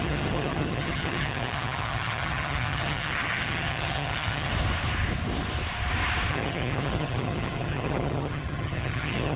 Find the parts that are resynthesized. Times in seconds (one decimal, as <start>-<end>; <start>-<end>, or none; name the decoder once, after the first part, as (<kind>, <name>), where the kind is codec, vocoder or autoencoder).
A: 0.0-4.5 (vocoder, HiFi-GAN); 6.3-9.4